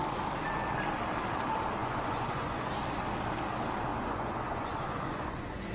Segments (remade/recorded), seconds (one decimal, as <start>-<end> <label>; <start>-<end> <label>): 0.0-1.8 recorded; 1.8-2.7 remade; 2.7-3.9 recorded; 3.9-5.7 remade